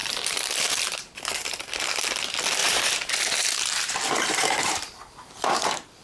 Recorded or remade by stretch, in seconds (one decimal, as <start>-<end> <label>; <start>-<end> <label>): 0.0-0.8 remade; 0.8-2.6 recorded; 2.6-6.0 remade